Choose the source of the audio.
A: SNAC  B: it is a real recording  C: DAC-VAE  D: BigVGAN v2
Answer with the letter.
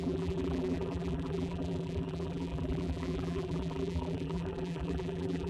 D